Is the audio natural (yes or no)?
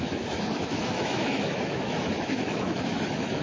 no